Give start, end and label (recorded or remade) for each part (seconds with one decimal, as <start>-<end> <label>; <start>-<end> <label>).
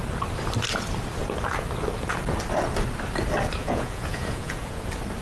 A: 0.0-3.6 recorded; 3.6-4.8 remade; 4.8-5.2 recorded